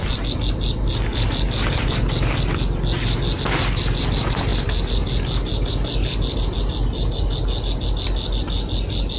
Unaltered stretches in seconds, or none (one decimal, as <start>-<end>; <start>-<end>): 0.0-9.2